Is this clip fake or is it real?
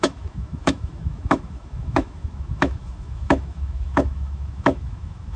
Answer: fake